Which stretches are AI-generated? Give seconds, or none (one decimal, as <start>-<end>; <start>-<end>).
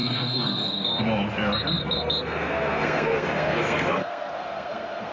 0.0-1.0; 1.8-5.1